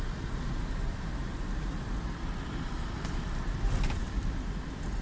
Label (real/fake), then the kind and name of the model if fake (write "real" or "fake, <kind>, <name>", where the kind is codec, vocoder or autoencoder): fake, vocoder, BigVGAN v2